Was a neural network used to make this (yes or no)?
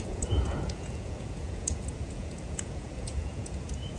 yes